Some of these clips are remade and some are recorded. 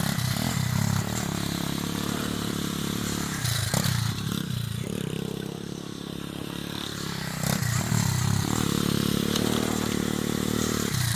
remade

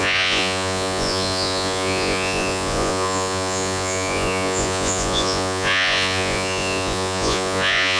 remade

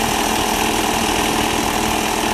recorded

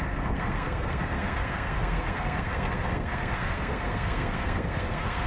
remade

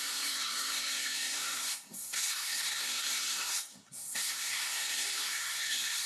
remade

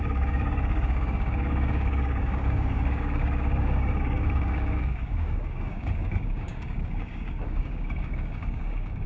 remade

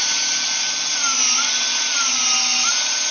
recorded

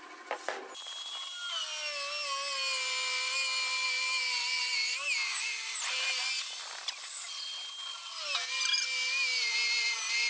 recorded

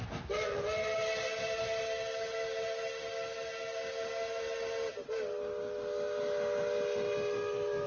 recorded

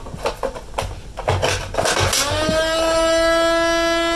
recorded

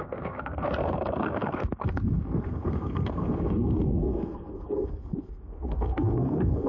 remade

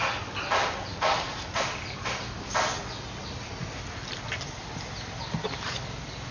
recorded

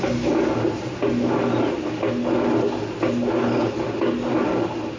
recorded